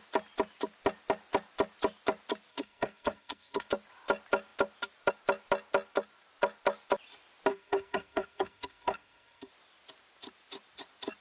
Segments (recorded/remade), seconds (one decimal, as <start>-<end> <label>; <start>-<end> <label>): 0.0-2.5 recorded; 2.5-3.7 remade; 3.7-7.5 recorded; 7.5-9.5 remade; 9.5-11.2 recorded